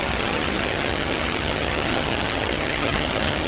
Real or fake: fake